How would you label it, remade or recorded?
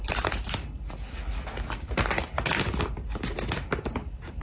recorded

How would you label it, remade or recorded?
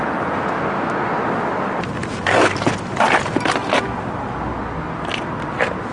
recorded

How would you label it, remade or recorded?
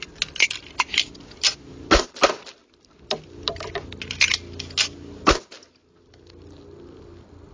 recorded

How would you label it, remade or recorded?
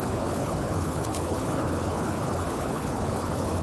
remade